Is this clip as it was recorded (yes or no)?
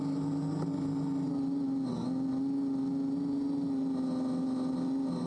yes